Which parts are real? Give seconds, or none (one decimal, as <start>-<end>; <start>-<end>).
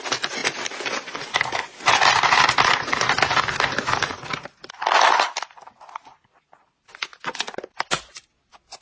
0.0-8.8